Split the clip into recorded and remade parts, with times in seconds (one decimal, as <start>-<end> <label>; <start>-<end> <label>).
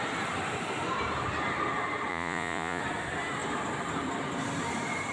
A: 0.0-2.1 recorded; 2.1-2.8 remade; 2.8-5.1 recorded